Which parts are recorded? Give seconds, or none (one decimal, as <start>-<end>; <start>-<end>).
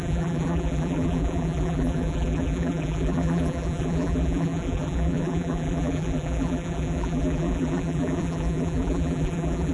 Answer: none